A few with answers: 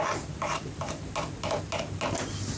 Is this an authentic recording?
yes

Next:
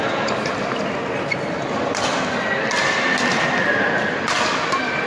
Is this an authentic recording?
yes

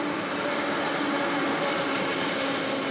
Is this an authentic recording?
yes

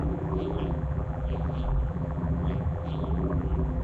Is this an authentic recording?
no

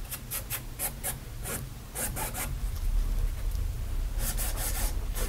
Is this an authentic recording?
yes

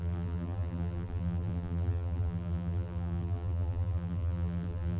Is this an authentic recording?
no